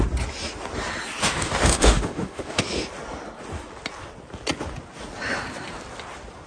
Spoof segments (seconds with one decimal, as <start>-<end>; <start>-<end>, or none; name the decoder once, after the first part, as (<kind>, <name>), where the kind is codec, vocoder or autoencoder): 1.2-2.6 (autoencoder, DAC-VAE)